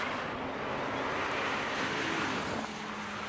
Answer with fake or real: real